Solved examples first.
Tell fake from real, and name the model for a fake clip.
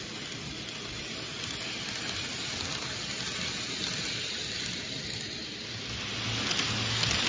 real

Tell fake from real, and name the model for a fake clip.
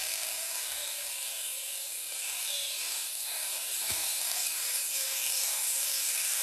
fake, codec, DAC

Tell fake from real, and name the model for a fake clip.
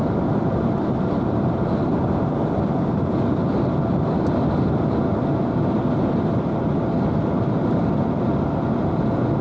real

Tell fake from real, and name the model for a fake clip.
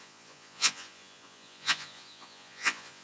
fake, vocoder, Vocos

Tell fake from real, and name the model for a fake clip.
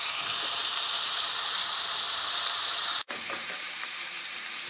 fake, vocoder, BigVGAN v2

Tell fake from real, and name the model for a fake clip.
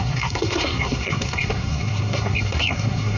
fake, codec, SNAC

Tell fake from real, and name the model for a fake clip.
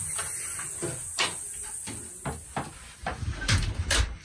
real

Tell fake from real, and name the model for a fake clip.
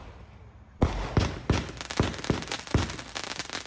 real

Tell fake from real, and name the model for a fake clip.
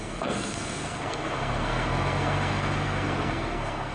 fake, codec, SNAC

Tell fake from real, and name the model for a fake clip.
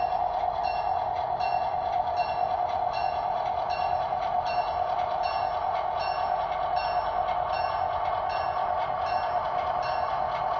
real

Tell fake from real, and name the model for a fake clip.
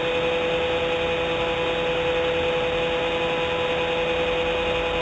real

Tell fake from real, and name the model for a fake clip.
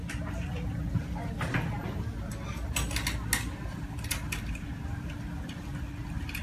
real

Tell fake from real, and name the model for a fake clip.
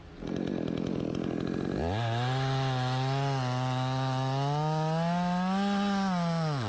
real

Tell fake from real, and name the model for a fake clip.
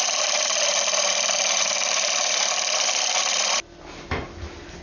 real